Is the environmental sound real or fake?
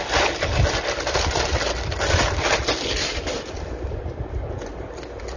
real